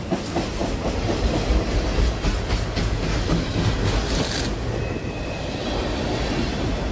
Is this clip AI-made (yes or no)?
no